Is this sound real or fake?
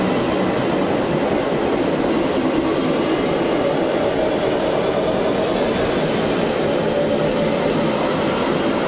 real